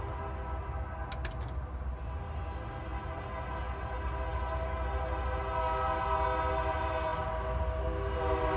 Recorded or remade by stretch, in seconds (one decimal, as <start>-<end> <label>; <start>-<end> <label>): 0.0-8.6 recorded